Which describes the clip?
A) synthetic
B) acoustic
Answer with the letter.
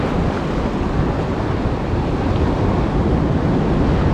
B